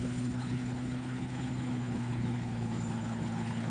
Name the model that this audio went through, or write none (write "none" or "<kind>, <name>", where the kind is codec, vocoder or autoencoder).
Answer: codec, HILCodec